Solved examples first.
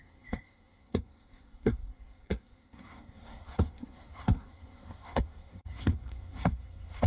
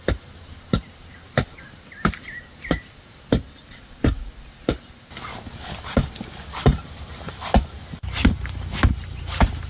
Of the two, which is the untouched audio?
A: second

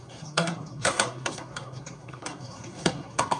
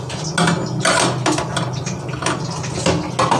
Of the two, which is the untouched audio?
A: second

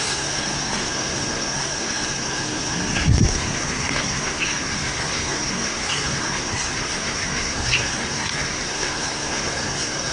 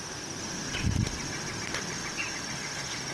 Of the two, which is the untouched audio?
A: second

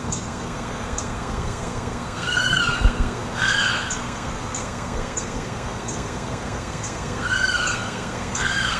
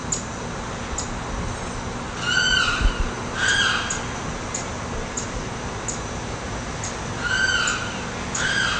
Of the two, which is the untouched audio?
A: second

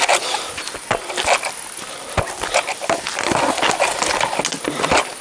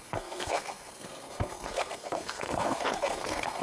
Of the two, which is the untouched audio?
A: first